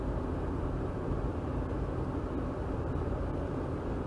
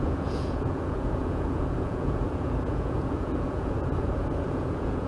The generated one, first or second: second